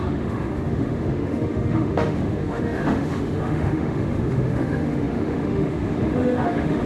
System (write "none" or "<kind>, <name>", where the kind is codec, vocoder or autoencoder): autoencoder, DAC-VAE